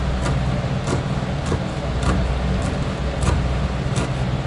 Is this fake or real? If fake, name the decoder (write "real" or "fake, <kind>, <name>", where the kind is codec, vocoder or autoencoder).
real